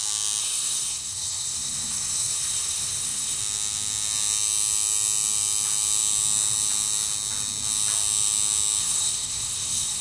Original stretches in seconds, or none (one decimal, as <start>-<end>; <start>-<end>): 0.0-0.4; 3.4-8.8